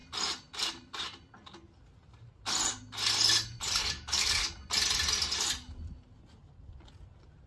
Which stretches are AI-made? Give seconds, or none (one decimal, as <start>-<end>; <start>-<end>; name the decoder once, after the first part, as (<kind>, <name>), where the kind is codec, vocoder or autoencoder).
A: 3.8-4.5 (codec, DAC)